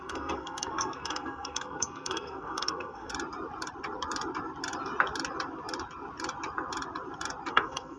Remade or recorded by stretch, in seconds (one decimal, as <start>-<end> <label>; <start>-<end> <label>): 0.0-3.1 remade; 3.1-7.5 recorded; 7.5-8.0 remade